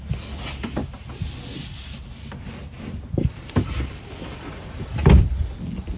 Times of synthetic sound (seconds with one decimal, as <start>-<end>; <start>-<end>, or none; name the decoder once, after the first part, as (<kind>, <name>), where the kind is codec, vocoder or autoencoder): none